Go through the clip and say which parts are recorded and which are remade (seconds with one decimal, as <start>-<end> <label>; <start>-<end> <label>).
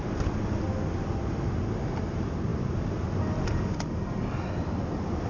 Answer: 0.0-5.3 recorded